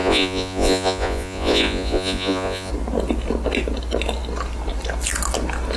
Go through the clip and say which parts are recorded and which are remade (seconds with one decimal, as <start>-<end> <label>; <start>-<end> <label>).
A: 0.0-2.7 remade; 2.7-5.8 recorded